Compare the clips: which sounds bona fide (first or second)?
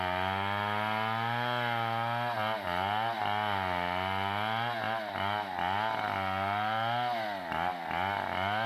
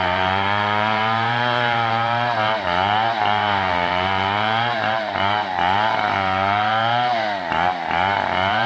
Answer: first